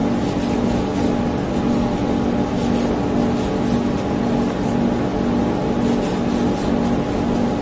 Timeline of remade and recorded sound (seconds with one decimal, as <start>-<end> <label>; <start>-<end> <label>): 0.0-7.6 recorded